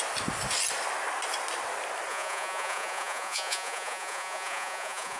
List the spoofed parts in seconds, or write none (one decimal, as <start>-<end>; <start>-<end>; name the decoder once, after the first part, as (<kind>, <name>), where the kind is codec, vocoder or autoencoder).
2.1-5.2 (vocoder, Vocos)

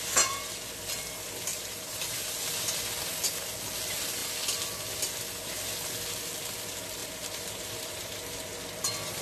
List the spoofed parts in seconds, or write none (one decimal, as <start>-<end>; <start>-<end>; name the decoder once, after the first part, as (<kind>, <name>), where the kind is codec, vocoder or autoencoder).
1.5-2.0 (vocoder, BigVGAN v2); 7.0-8.6

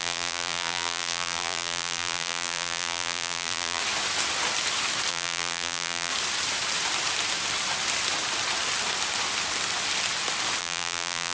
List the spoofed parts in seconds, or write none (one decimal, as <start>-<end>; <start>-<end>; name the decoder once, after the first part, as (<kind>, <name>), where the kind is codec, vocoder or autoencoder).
0.0-3.8 (vocoder, BigVGAN v2); 5.1-6.1; 10.6-11.3

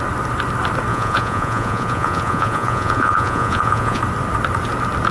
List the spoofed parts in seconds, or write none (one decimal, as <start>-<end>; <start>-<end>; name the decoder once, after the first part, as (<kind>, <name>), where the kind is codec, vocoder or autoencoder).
0.9-4.0 (vocoder, Vocos)

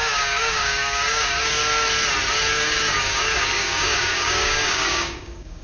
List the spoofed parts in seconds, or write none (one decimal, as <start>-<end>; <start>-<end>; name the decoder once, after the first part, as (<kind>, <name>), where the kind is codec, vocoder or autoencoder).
0.0-1.6 (codec, DAC); 2.5-5.6

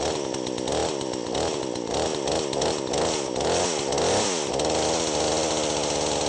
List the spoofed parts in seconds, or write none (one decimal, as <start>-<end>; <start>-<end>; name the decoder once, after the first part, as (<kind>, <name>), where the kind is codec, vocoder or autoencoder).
none